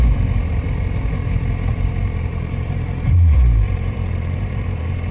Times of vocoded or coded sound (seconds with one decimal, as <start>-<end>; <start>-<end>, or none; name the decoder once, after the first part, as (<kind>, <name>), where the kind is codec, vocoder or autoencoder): 1.7-5.1 (vocoder, BigVGAN v2)